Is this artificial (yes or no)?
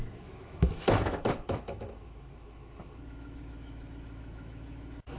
yes